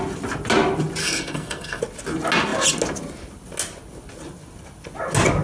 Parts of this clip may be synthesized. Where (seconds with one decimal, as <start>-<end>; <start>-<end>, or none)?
1.0-1.8